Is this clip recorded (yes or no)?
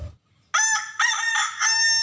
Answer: yes